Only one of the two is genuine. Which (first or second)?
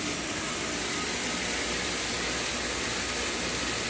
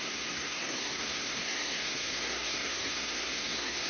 first